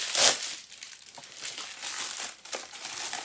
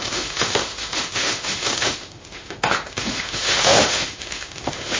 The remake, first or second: second